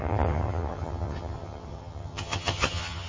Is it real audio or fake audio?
fake